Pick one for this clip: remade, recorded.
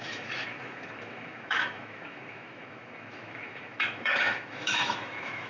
remade